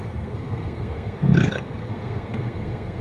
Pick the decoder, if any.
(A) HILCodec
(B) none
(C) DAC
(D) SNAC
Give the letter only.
D